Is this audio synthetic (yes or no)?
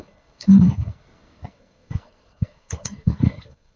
yes